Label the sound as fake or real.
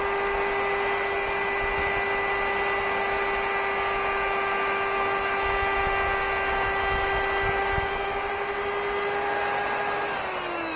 real